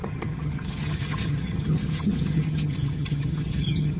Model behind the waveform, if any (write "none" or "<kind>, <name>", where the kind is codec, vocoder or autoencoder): vocoder, HiFi-GAN